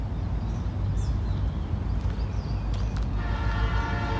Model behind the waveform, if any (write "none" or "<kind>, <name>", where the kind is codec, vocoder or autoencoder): none